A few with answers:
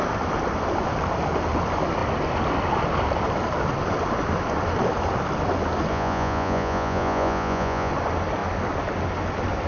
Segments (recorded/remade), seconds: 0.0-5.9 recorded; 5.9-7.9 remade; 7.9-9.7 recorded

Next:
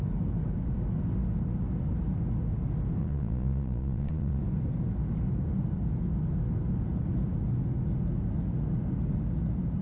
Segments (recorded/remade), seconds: 0.0-3.0 recorded; 3.0-4.4 remade; 4.4-9.8 recorded

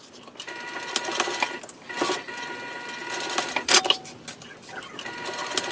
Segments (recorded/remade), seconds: 0.0-5.7 recorded

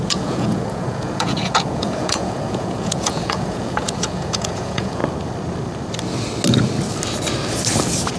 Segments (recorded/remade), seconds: 0.0-5.0 remade; 5.0-8.2 recorded

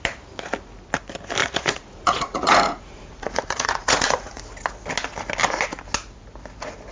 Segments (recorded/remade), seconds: 0.0-1.4 recorded; 1.4-4.4 remade; 4.4-6.9 recorded

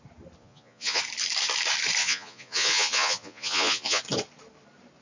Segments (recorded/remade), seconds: 0.0-0.4 recorded; 0.4-1.0 remade; 1.0-2.0 recorded; 2.0-4.0 remade; 4.0-5.0 recorded

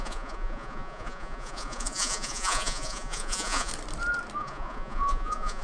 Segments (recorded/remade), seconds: 0.0-3.7 remade; 3.7-4.4 recorded; 4.4-5.6 remade